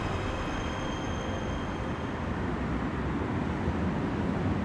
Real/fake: real